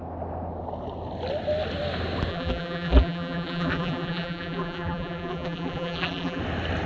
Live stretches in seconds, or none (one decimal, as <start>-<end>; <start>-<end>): 0.0-2.3; 6.4-6.9